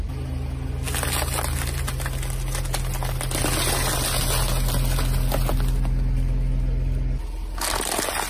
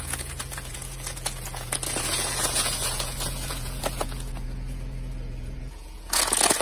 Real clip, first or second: first